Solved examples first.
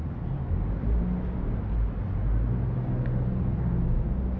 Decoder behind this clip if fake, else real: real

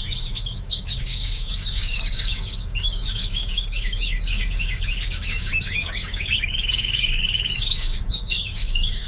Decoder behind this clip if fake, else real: fake, codec, DAC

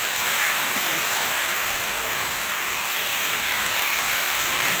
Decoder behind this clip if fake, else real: fake, codec, DAC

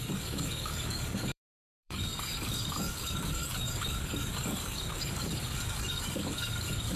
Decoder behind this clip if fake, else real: fake, codec, DAC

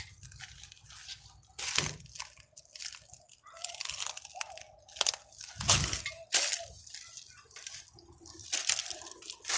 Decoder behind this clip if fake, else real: real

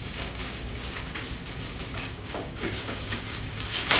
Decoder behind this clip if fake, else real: fake, codec, DAC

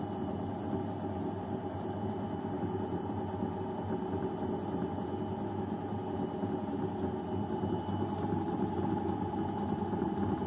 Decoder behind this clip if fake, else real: real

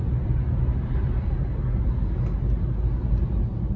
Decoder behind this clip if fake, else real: real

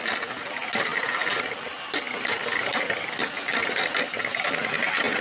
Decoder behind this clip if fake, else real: real